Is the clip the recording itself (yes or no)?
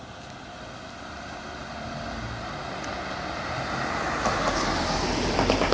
yes